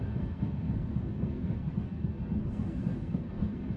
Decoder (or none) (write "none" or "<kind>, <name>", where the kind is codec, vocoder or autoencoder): codec, SNAC